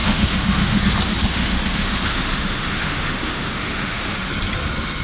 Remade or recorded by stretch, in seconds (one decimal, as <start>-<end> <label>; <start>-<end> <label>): 0.0-0.8 remade; 0.8-1.3 recorded; 1.3-4.3 remade; 4.3-5.0 recorded